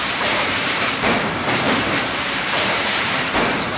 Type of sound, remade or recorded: remade